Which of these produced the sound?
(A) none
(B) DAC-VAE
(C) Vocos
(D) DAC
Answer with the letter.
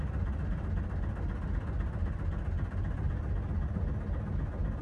A